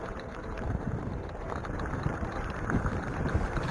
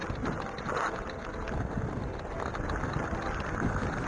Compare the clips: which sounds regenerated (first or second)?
first